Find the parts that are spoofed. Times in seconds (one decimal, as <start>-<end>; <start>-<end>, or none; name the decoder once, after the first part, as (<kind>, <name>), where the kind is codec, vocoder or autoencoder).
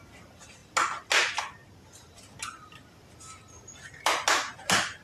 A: none